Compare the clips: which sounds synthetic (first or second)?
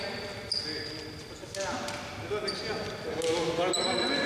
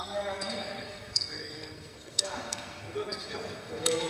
second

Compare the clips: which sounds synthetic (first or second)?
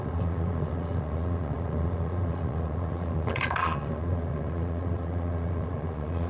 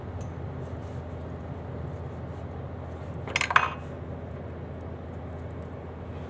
first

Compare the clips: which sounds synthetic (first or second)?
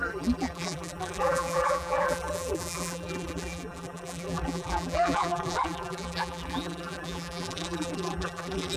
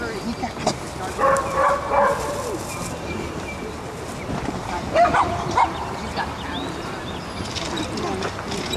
first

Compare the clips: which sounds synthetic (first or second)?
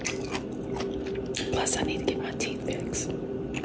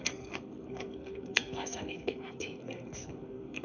second